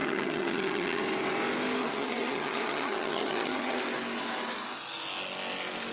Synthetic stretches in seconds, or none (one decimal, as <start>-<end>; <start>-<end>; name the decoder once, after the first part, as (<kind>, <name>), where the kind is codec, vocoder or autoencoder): 0.0-1.0 (vocoder, HiFi-GAN); 1.8-3.8